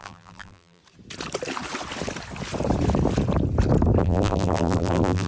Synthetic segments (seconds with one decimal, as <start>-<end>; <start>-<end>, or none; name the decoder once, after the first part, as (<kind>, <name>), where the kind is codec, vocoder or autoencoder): 0.0-0.8 (vocoder, BigVGAN v2); 4.0-5.3